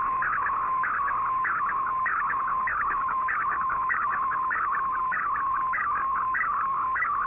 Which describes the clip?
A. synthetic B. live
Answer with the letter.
A